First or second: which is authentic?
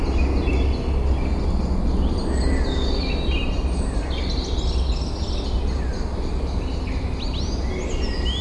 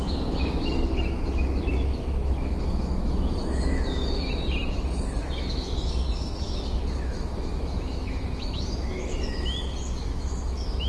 first